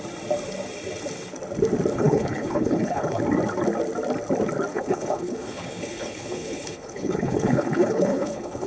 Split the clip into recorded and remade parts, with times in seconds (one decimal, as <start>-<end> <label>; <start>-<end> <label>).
0.0-1.9 recorded; 1.9-3.2 remade; 3.2-4.7 recorded; 4.7-8.7 remade